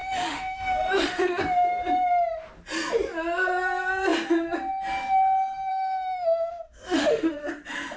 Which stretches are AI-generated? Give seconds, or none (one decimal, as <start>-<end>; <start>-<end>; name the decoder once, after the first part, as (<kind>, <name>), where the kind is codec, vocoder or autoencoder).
0.0-1.4 (autoencoder, DAC-VAE); 5.7-7.5

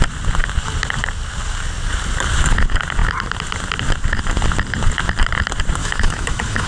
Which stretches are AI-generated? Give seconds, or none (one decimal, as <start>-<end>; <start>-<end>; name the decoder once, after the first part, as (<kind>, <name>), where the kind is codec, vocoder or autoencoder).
5.8-6.7 (autoencoder, DAC-VAE)

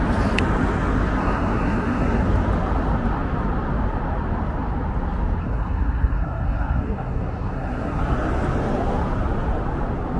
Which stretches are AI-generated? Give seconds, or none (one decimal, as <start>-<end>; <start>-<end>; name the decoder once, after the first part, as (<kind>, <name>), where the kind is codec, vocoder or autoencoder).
1.2-2.2 (codec, SNAC); 5.4-8.0

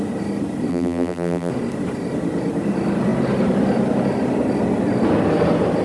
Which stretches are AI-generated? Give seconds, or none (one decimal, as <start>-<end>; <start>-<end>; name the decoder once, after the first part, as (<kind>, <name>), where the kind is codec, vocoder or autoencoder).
0.7-1.5 (vocoder, BigVGAN v2)